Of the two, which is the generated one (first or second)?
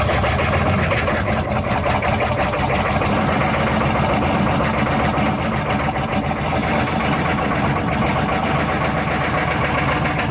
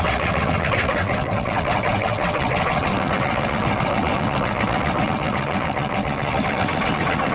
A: second